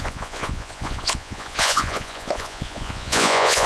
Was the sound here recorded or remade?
remade